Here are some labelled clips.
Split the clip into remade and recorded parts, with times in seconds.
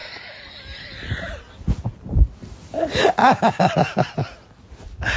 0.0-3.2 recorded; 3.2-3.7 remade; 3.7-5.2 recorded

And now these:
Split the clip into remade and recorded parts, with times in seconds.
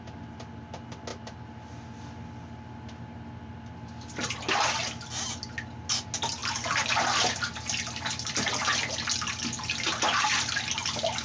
0.0-11.2 recorded